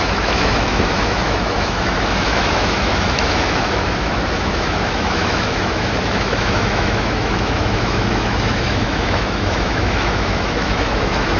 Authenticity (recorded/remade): remade